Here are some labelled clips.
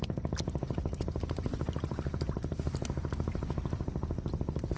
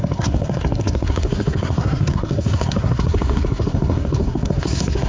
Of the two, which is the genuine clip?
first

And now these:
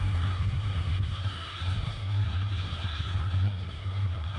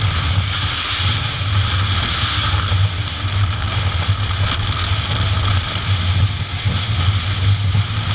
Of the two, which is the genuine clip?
second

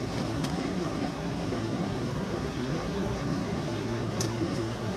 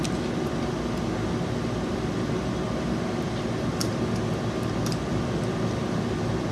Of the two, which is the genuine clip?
second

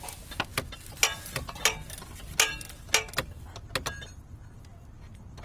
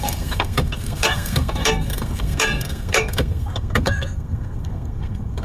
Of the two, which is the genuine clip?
first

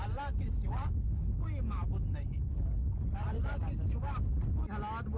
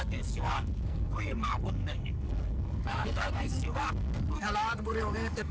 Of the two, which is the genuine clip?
first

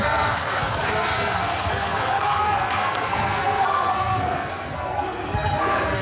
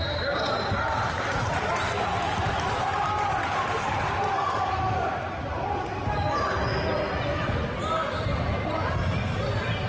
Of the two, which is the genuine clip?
second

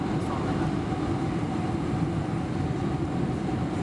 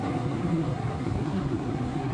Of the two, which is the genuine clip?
first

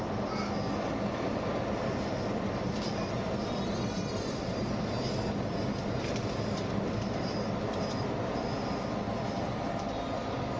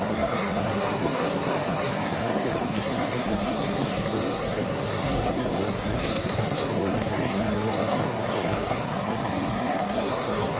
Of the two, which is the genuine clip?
first